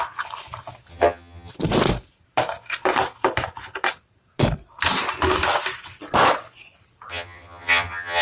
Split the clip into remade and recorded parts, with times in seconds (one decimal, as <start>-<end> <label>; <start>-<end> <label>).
0.0-0.9 recorded; 0.9-1.5 remade; 1.5-7.1 recorded; 7.1-8.2 remade